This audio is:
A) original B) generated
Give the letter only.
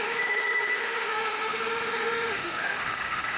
B